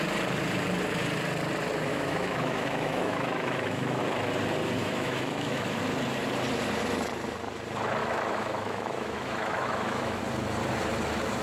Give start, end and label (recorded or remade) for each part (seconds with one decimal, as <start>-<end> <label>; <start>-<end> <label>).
0.0-1.9 recorded; 1.9-4.0 remade; 4.0-4.8 recorded; 4.8-5.8 remade; 5.8-8.0 recorded; 8.0-10.2 remade; 10.2-11.4 recorded